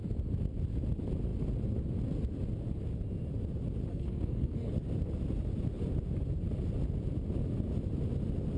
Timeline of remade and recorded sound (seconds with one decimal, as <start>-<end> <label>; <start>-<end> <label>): 0.0-3.9 recorded; 3.9-4.7 remade; 4.7-8.6 recorded